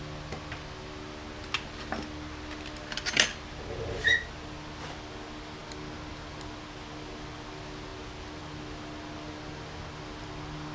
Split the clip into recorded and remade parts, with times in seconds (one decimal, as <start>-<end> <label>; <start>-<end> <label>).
0.0-10.7 recorded